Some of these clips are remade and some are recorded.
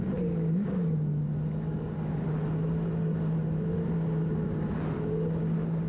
recorded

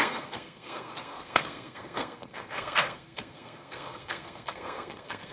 remade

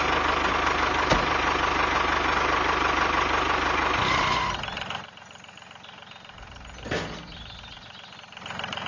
recorded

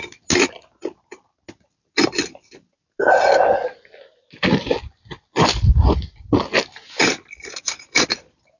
recorded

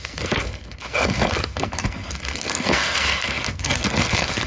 remade